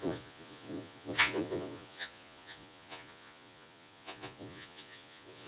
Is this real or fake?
fake